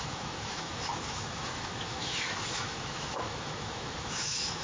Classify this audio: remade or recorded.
remade